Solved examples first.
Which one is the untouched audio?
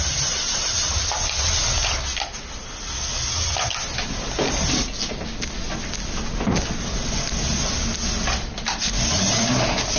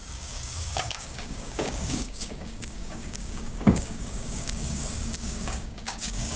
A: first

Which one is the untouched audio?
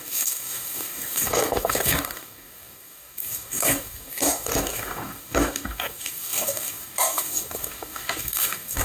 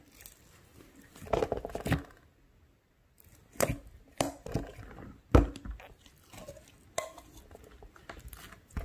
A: second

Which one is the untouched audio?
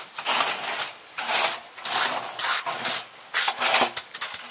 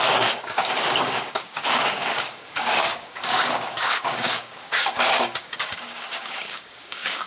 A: first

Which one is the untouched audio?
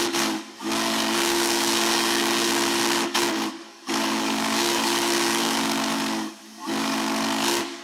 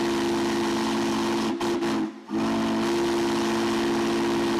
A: second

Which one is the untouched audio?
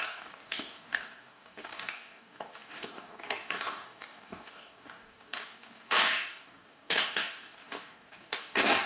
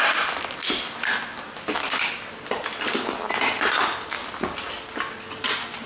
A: second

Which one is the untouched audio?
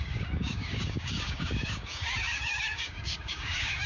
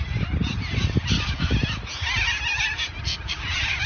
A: second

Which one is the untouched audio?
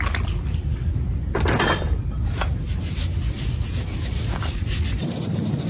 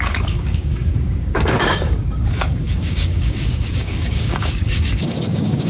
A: first